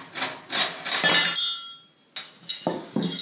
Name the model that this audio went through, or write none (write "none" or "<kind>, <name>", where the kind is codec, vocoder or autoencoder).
none